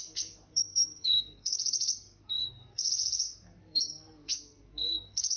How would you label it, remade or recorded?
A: remade